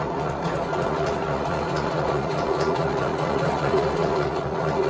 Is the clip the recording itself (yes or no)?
no